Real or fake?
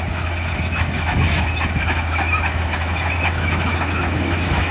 fake